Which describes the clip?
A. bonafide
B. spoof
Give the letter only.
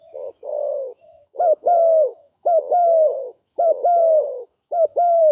B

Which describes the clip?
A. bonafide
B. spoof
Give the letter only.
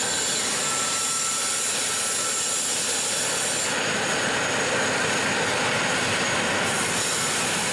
A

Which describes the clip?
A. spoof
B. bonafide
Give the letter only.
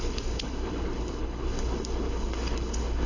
A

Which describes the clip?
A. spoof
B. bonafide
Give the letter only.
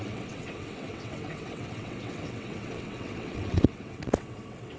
A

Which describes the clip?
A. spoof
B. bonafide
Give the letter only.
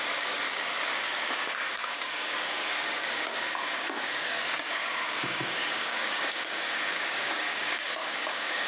A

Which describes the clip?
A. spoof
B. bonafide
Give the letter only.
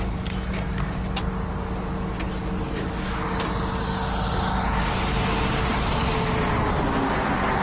B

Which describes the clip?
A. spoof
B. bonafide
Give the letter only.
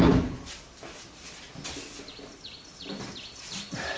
B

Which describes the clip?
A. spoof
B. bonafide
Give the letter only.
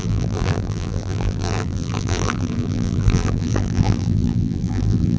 A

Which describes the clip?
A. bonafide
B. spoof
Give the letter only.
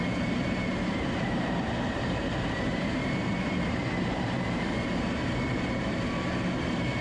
B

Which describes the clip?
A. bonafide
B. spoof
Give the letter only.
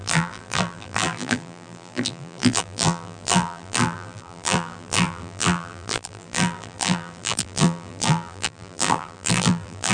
B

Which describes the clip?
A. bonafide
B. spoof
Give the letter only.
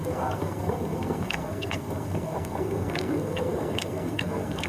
B